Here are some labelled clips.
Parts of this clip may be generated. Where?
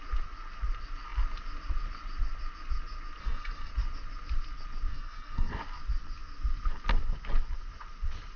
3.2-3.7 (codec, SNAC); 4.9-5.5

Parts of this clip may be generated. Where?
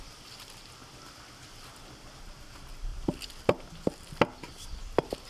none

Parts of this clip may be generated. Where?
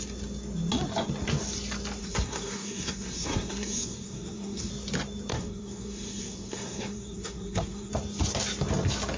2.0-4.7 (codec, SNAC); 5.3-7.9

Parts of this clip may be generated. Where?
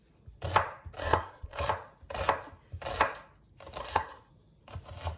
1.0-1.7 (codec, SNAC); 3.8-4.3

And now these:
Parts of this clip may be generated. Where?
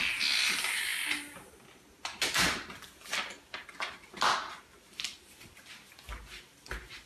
none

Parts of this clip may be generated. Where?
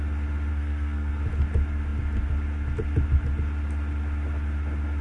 0.5-1.1 (codec, SNAC)